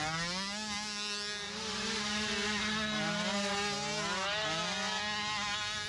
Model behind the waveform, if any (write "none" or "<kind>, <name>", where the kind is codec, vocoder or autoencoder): none